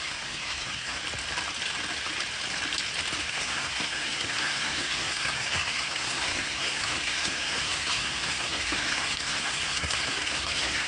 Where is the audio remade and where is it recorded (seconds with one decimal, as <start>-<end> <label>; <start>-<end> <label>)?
0.0-1.0 remade; 1.0-3.3 recorded; 3.3-10.9 remade